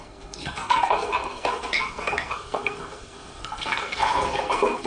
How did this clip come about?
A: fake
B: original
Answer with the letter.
A